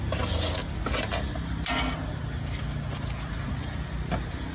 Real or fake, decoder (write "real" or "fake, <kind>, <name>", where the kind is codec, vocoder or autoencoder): real